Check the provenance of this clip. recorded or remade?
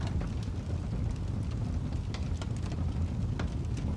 recorded